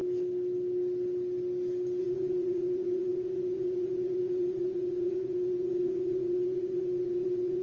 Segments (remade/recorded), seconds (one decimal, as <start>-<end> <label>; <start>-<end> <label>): 0.0-2.0 recorded; 2.0-7.6 remade